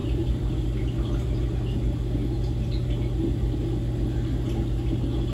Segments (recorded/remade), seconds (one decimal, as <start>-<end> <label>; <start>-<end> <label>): 0.0-0.5 remade; 0.5-5.3 recorded